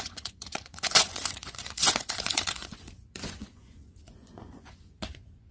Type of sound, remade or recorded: remade